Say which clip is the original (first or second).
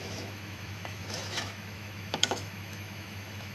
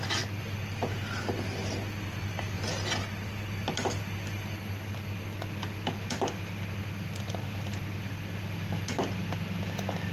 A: second